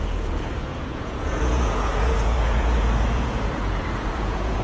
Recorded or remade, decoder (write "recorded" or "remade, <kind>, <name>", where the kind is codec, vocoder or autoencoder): remade, vocoder, Vocos